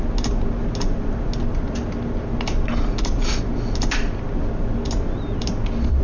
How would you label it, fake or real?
real